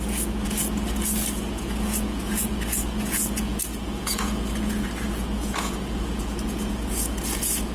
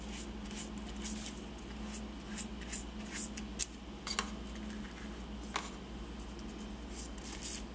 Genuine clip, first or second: second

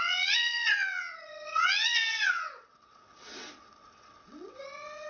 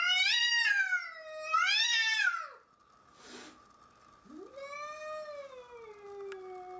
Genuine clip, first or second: second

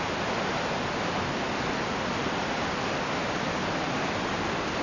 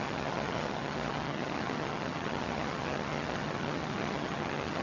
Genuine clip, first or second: first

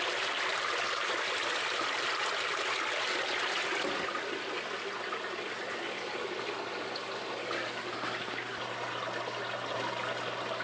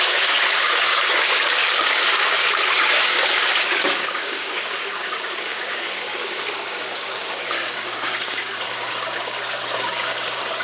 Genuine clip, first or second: first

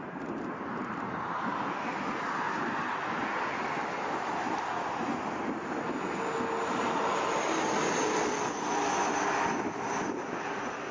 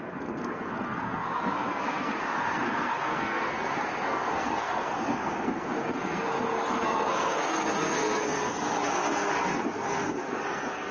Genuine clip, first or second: first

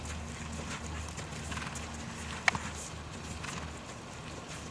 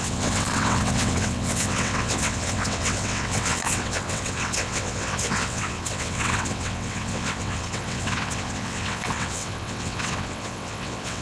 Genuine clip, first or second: first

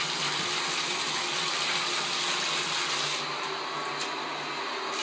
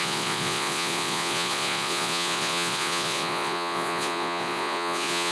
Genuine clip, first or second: first